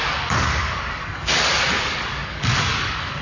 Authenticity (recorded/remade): remade